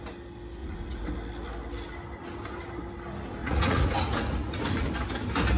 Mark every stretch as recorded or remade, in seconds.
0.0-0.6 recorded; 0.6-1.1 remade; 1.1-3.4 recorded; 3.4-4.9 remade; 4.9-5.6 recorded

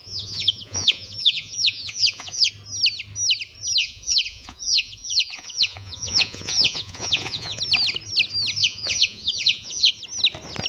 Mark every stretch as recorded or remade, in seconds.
0.0-2.5 remade; 2.5-3.8 recorded; 3.8-7.6 remade; 7.6-8.6 recorded; 8.6-9.9 remade; 9.9-10.7 recorded